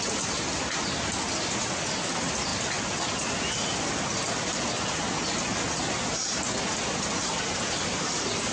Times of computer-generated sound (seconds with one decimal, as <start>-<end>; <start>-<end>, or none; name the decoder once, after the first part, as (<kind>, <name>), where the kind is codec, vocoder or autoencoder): none